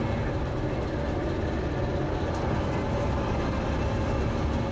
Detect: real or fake real